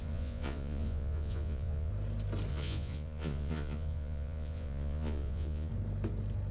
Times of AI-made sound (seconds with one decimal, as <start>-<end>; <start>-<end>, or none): 0.0-1.9; 2.5-5.7